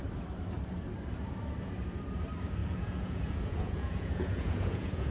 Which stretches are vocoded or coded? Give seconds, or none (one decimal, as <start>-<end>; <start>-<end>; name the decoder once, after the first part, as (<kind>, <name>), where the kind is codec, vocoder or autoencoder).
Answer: 2.6-5.1 (vocoder, Vocos)